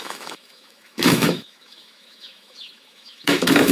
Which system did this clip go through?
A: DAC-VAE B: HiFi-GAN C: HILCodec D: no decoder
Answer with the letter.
A